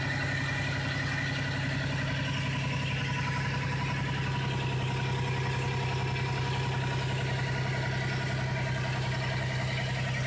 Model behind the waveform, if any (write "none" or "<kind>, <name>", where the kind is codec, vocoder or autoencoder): none